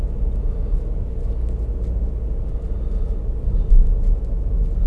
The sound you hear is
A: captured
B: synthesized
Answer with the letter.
A